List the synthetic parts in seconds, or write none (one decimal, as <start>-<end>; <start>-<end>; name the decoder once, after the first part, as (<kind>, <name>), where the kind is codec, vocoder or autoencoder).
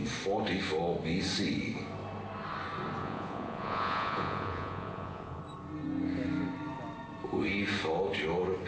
3.0-5.4 (vocoder, Vocos)